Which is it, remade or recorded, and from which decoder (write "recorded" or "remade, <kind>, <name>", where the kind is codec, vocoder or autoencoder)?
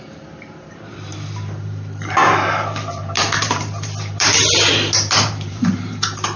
remade, vocoder, BigVGAN v2